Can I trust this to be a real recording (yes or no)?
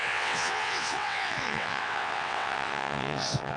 no